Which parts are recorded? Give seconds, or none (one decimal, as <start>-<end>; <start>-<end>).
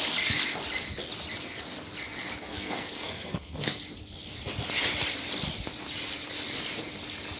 0.0-2.5; 3.8-7.4